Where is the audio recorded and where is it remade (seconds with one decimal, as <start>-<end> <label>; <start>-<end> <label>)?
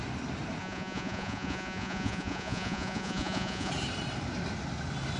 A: 0.0-0.6 recorded; 0.6-3.7 remade; 3.7-5.2 recorded